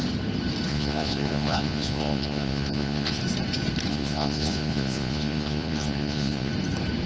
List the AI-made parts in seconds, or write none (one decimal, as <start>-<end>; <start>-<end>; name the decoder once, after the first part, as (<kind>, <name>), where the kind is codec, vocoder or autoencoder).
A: 0.7-3.2 (vocoder, Vocos); 3.9-6.5